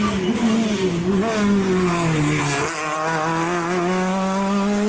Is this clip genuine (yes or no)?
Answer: yes